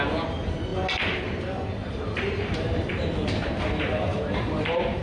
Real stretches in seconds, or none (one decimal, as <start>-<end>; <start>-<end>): 0.0-1.8; 3.6-4.1